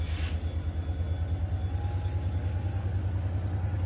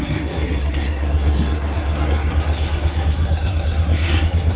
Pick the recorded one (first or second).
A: first